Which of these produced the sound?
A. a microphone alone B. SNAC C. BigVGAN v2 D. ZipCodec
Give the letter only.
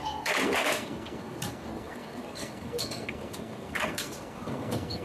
B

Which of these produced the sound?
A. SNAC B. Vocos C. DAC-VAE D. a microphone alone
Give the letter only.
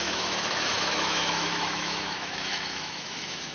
C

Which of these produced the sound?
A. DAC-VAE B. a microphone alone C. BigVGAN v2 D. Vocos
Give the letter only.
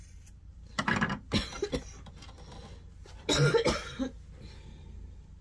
B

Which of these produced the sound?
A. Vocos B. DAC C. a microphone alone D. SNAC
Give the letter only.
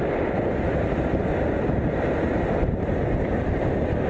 C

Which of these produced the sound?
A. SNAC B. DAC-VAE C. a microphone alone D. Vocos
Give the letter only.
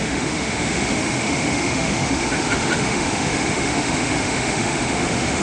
B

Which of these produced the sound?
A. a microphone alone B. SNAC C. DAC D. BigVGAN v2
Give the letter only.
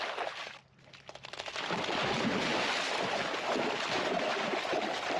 A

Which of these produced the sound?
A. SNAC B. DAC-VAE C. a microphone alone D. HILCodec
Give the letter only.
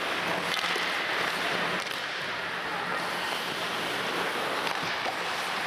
C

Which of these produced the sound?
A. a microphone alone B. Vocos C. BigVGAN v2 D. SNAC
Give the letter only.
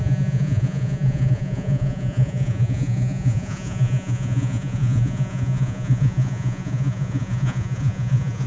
B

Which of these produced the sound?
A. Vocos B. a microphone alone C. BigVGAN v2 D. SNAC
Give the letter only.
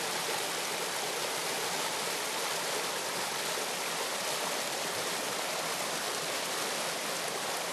B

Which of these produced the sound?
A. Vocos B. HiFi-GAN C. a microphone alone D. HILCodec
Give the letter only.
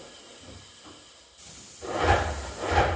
C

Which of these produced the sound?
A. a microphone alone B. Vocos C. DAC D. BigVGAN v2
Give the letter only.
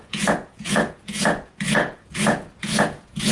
B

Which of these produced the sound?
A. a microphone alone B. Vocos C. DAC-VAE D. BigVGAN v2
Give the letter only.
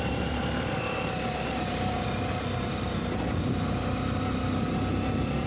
A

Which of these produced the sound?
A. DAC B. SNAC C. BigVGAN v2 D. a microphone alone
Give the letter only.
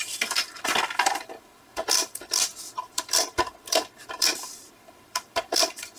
C